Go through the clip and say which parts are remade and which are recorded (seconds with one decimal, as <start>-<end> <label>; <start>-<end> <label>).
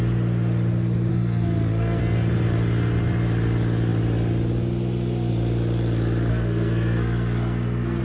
0.0-1.1 recorded; 1.1-2.0 remade; 2.0-6.3 recorded; 6.3-8.0 remade